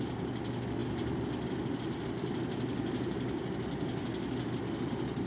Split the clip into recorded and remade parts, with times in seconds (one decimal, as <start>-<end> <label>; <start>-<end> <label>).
0.0-5.3 recorded